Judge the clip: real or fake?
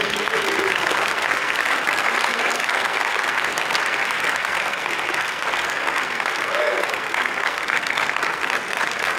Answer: fake